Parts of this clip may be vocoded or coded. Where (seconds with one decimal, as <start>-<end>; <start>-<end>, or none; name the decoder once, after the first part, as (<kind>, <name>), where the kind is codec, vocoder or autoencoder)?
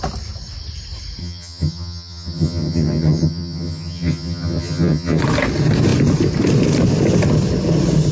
1.2-5.2 (vocoder, HiFi-GAN)